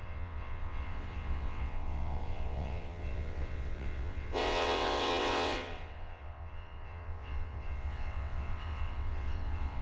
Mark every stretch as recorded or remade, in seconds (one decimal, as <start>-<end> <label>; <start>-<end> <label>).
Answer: 0.0-9.8 remade